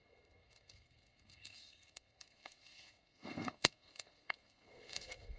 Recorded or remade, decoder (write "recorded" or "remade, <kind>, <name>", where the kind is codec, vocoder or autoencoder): remade, codec, SNAC